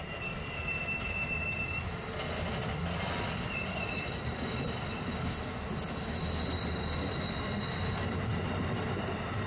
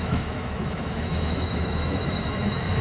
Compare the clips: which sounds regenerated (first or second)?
second